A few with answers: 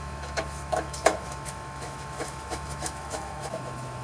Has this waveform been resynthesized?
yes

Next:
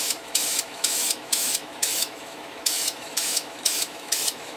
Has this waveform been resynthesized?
yes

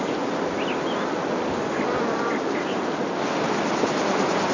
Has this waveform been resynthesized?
no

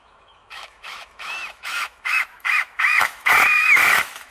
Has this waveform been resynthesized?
yes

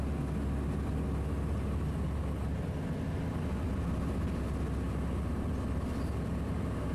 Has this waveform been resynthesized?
no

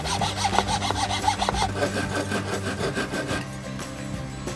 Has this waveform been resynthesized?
no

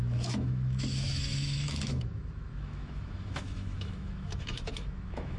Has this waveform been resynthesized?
yes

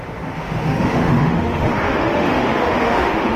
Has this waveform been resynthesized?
yes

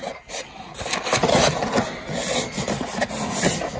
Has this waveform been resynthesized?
no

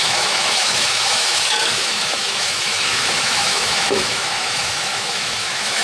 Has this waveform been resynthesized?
yes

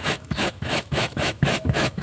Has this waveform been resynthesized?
yes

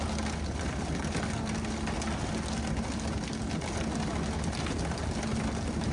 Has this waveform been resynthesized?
no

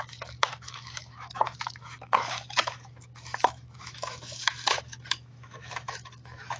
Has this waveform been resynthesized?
yes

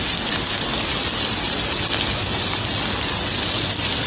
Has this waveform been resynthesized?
no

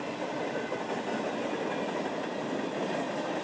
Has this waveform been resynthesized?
no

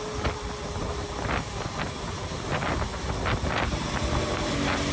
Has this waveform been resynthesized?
no